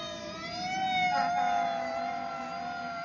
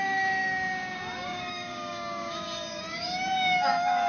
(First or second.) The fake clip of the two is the second